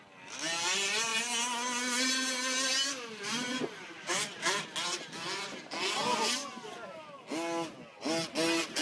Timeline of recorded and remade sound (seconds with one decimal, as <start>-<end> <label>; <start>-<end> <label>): 0.0-8.8 recorded